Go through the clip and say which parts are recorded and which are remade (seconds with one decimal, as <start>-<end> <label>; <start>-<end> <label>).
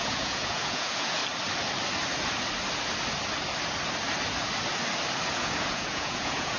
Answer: 0.0-1.2 remade; 1.2-5.2 recorded; 5.2-6.6 remade